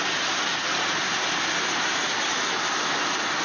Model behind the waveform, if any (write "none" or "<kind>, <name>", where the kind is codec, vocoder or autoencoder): none